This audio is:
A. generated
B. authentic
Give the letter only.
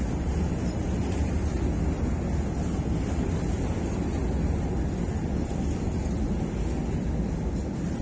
B